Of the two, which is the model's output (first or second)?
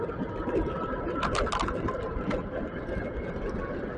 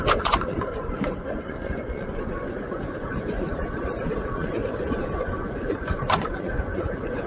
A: second